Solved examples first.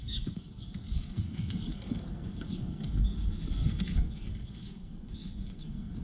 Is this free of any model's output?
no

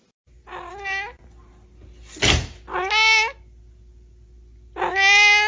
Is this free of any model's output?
yes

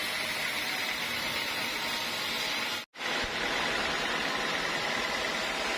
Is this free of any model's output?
yes